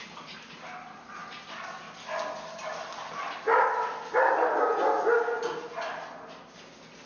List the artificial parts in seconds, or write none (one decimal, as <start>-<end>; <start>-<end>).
none